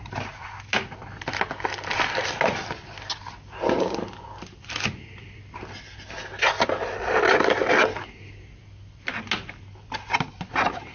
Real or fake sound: real